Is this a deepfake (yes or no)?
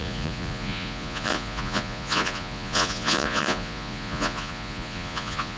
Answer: yes